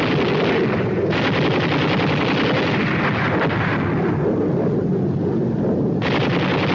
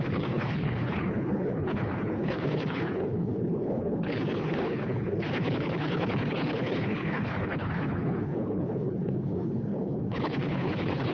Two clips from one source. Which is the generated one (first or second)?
second